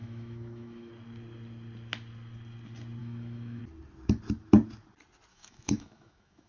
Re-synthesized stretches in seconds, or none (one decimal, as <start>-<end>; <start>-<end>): 0.0-0.9; 3.0-3.6; 5.3-6.5